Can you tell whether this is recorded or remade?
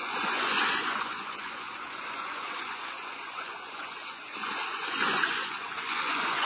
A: remade